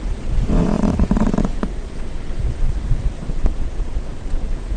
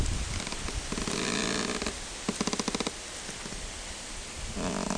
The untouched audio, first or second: second